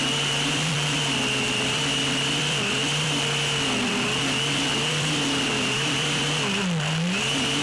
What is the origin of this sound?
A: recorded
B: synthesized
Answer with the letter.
B